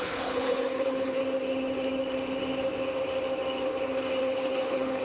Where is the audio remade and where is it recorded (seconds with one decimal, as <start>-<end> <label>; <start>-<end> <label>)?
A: 0.0-1.2 remade; 1.2-4.2 recorded; 4.2-5.0 remade